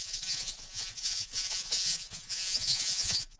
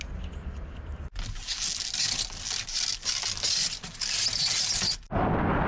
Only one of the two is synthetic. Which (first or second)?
first